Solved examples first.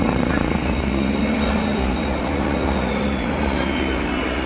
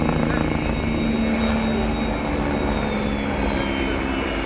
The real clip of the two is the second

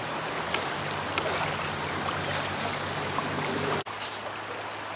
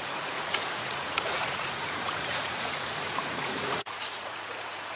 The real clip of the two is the first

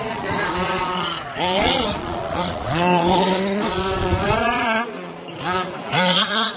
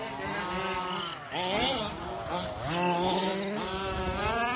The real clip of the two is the second